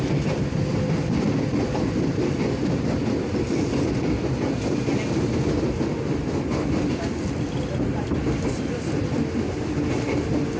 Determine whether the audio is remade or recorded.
recorded